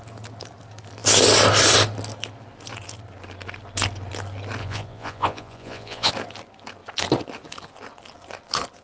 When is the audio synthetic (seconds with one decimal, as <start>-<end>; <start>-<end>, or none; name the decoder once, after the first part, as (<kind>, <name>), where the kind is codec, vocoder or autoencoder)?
4.6-6.1 (vocoder, Vocos)